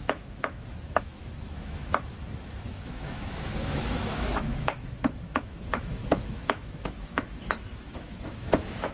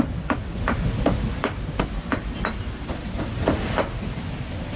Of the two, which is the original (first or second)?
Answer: second